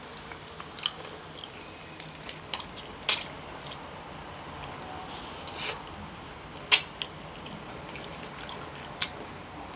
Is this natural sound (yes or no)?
yes